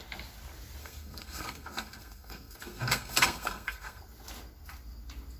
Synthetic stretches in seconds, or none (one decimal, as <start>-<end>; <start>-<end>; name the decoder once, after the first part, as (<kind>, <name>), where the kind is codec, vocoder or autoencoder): 0.8-4.0 (codec, SNAC)